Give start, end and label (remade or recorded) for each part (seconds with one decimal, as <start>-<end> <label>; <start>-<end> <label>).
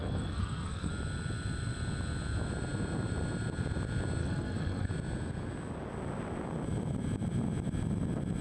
0.0-0.9 remade; 0.9-4.2 recorded; 4.2-4.9 remade; 4.9-8.4 recorded